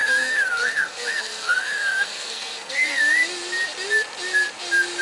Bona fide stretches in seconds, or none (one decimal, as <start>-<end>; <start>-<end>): 3.0-5.0